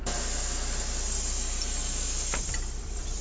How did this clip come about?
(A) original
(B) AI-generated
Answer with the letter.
B